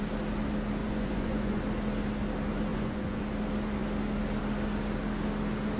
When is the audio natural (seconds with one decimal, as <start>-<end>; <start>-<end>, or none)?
0.0-0.8; 1.6-2.7; 3.2-5.8